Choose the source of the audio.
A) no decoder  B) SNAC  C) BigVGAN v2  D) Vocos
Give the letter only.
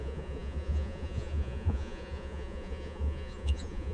D